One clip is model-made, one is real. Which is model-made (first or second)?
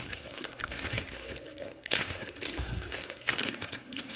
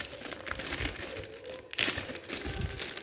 first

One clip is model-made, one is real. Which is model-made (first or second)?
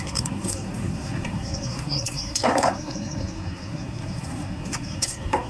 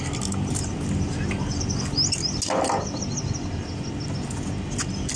first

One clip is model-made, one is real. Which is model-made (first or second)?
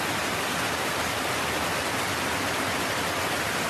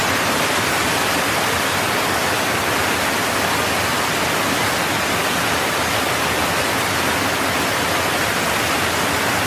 first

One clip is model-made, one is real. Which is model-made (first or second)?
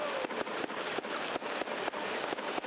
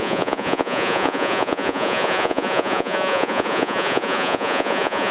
second